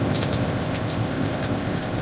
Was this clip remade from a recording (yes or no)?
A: yes